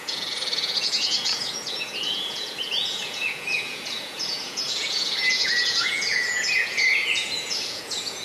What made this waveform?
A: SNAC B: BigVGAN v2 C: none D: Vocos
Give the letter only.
D